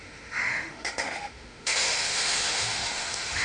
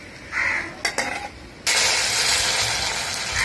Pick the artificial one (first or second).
first